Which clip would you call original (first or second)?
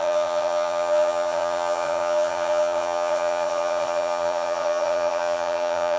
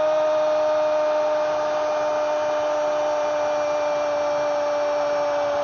second